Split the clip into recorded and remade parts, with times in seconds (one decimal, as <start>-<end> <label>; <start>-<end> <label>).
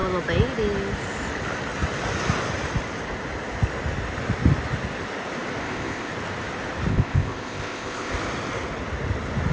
0.0-5.6 recorded; 5.6-6.1 remade; 6.1-6.9 recorded; 6.9-8.1 remade; 8.1-9.5 recorded